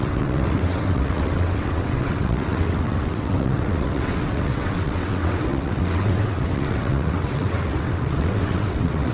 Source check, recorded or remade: remade